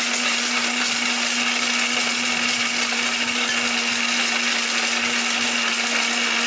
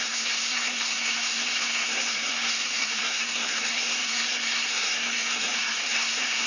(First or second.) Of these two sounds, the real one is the first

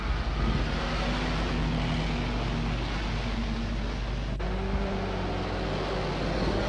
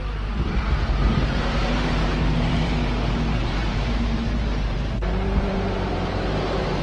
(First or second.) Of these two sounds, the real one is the first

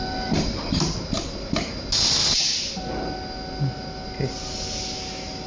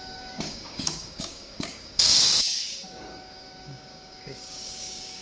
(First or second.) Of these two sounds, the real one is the first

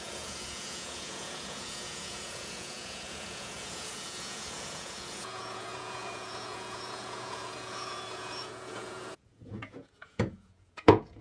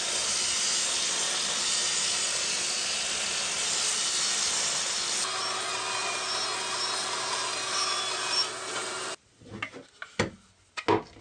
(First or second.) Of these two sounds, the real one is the second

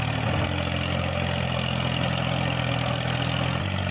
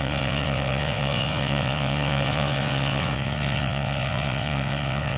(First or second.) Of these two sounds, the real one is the first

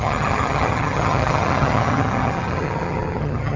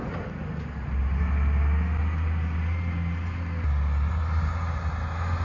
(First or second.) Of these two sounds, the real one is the second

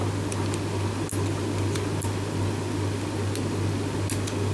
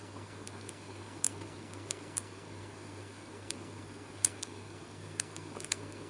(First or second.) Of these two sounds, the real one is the first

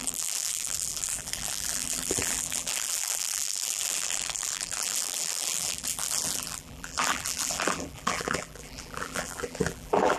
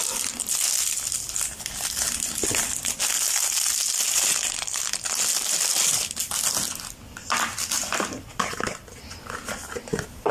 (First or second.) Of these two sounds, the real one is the second